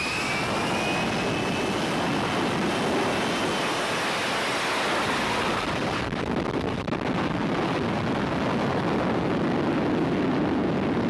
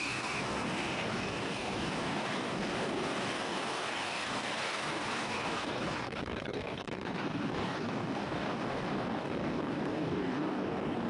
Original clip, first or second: first